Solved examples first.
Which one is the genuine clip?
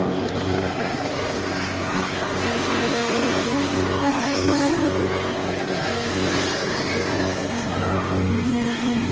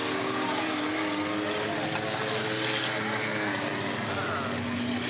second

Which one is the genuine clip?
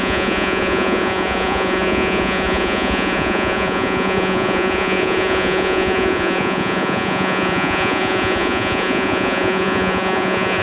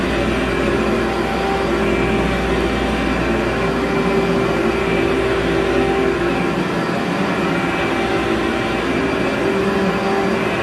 second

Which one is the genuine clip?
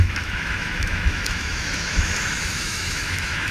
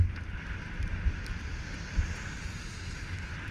second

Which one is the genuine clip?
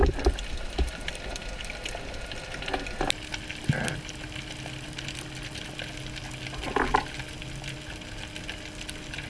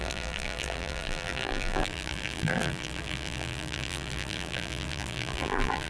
first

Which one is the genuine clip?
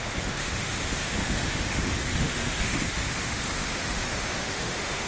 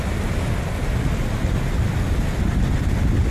second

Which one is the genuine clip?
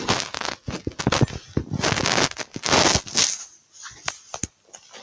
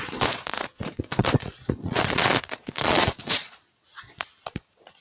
first